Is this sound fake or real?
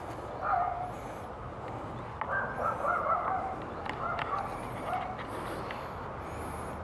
real